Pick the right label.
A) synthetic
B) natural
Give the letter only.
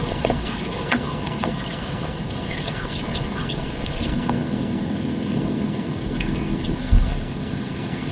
A